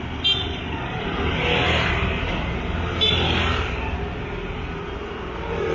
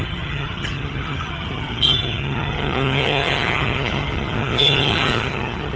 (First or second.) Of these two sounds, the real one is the first